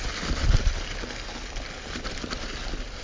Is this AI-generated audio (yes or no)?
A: no